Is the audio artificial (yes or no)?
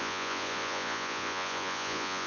yes